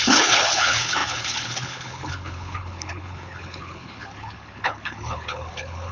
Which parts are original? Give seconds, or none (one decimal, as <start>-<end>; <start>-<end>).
none